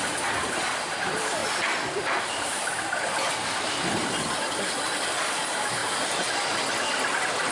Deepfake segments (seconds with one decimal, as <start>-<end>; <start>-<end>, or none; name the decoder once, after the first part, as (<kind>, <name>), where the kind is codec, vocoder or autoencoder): 0.0-1.4 (vocoder, BigVGAN v2); 2.2-2.7; 5.2-5.8; 7.1-7.5